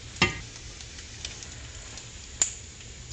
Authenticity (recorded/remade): recorded